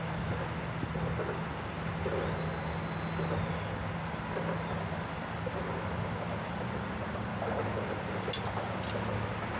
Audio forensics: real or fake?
real